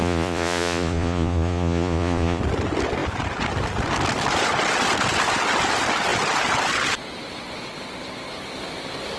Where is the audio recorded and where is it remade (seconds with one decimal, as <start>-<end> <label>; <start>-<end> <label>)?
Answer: 0.0-2.4 remade; 2.4-9.2 recorded